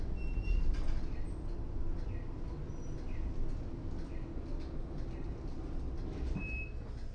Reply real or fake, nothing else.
real